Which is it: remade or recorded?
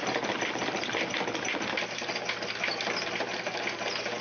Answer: recorded